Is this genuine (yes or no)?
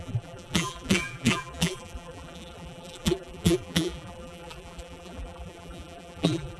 no